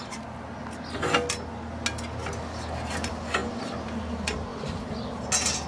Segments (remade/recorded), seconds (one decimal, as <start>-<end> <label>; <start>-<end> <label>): 0.0-5.7 recorded